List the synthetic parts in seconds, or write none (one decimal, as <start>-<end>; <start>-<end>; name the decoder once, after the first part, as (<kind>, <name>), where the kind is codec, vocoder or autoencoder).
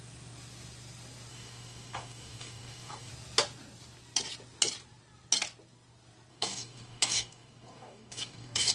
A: 1.3-3.1 (codec, DAC); 6.3-8.7